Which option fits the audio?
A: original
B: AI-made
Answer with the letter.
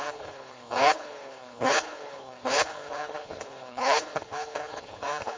B